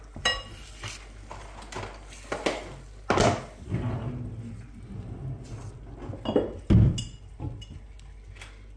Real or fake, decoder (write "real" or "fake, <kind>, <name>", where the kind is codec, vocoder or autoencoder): real